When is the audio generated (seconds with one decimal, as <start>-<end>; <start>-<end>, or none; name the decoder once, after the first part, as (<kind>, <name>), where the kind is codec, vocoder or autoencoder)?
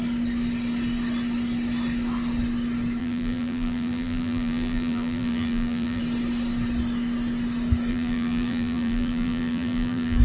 3.0-6.0 (vocoder, BigVGAN v2); 7.9-10.2